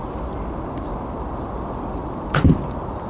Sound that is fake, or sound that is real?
real